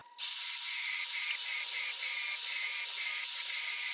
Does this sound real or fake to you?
real